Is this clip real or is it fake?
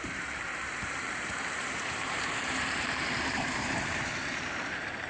fake